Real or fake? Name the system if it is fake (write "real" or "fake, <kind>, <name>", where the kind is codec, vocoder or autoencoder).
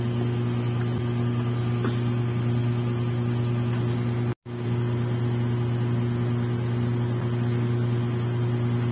real